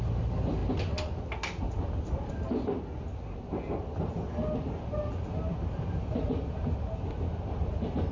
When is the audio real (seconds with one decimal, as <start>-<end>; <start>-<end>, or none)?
0.0-8.1